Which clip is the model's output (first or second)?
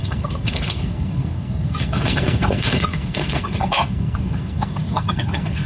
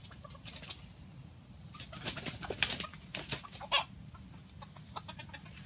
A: first